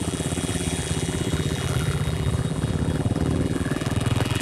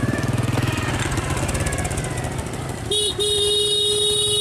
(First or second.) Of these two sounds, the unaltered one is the second